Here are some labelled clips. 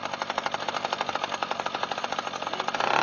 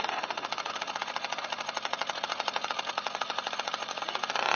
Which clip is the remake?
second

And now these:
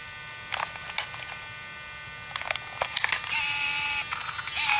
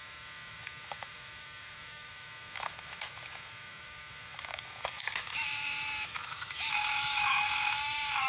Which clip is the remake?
second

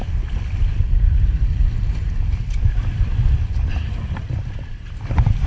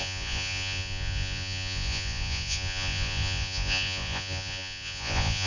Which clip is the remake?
second